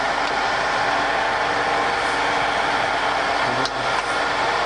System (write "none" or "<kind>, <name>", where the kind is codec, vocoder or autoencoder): none